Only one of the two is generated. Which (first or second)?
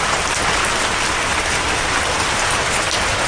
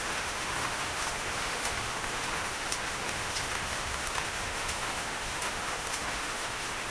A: second